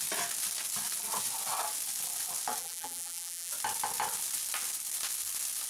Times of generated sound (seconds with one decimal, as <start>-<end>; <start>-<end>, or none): 2.6-3.5